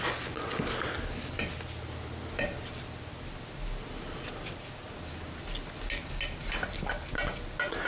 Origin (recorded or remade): recorded